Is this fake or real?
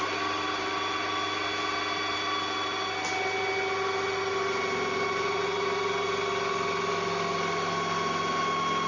real